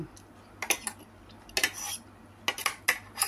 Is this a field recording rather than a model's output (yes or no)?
yes